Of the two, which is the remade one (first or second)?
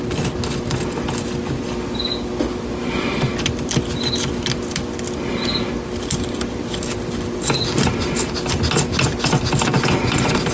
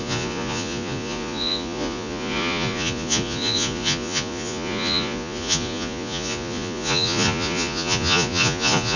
second